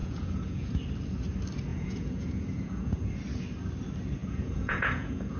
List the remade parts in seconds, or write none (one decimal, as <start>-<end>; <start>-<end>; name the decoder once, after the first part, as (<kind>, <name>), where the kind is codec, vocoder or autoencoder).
0.0-0.7 (vocoder, Vocos); 1.7-3.1; 4.2-5.4